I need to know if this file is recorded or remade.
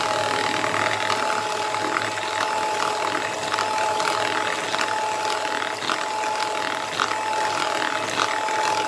recorded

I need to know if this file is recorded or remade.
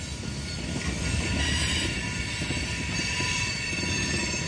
remade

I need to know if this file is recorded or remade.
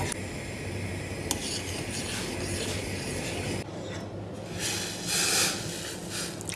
recorded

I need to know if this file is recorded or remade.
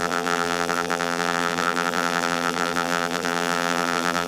remade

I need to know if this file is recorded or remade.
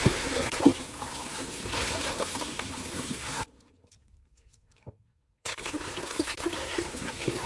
remade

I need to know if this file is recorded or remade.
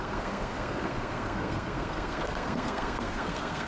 remade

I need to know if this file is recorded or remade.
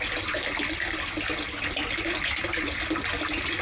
recorded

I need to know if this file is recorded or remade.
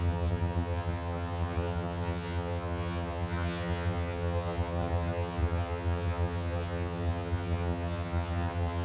remade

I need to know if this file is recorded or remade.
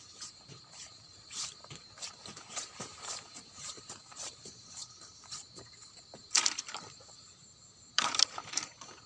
remade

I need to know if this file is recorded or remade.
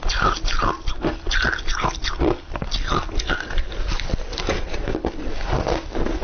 recorded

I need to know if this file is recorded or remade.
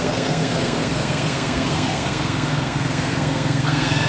remade